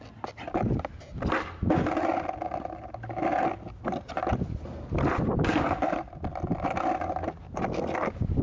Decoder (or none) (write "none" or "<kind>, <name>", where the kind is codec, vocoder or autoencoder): none